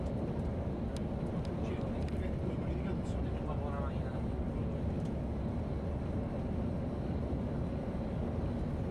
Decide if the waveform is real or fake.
real